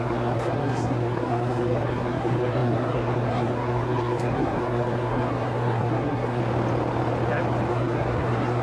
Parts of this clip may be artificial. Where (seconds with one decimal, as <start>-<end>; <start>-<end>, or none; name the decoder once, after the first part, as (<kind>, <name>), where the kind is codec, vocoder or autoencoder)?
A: 0.0-6.4 (codec, SNAC); 7.7-8.6